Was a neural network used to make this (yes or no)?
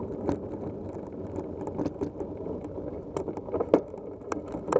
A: no